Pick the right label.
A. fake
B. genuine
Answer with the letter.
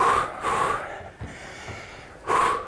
B